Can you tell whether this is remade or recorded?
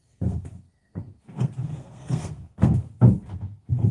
remade